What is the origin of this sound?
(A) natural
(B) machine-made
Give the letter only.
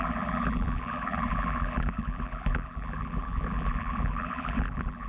B